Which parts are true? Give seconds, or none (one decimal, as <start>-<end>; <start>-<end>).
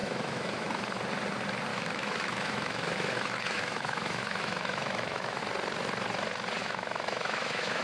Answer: 0.8-1.7; 5.4-6.6